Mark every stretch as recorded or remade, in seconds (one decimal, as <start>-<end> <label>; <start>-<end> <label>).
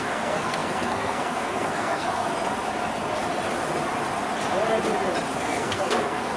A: 0.0-2.3 remade; 2.3-5.4 recorded; 5.4-6.4 remade